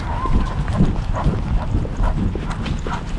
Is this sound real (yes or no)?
yes